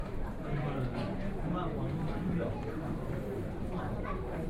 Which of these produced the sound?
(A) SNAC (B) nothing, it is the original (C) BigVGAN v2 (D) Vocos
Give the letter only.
C